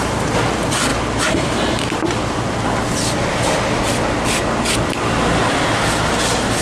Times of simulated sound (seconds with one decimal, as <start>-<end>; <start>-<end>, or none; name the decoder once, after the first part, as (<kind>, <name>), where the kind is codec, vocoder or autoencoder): none